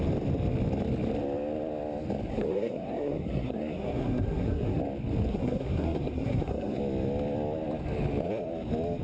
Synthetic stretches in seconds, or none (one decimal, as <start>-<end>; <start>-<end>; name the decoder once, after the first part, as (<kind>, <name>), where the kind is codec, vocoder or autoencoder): 2.3-4.8 (codec, SNAC); 5.3-6.8